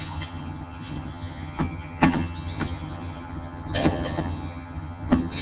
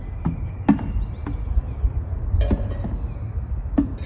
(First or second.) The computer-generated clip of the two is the first